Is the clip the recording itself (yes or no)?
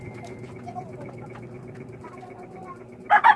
yes